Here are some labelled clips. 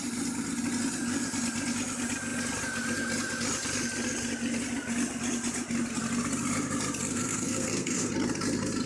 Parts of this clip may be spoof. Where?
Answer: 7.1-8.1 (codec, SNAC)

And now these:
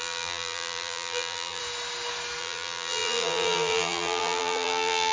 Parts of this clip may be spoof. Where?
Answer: 0.0-1.6 (vocoder, BigVGAN v2); 2.4-5.1

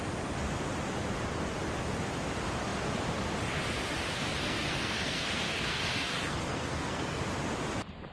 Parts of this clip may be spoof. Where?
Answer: 4.4-7.2 (codec, SNAC)

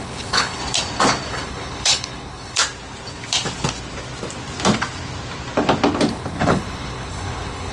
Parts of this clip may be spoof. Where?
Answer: 0.0-0.6 (codec, HILCodec); 1.3-2.6; 6.1-7.7

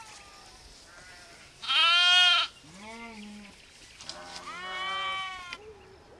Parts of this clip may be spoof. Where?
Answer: none

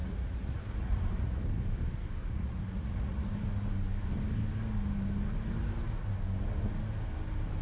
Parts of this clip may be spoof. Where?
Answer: 0.0-1.4 (vocoder, Vocos); 2.2-3.3

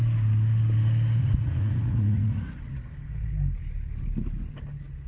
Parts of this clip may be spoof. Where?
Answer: 1.2-2.7 (vocoder, Vocos)

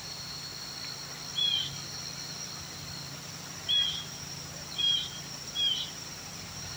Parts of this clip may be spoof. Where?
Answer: 0.0-0.5 (vocoder, BigVGAN v2); 3.9-6.8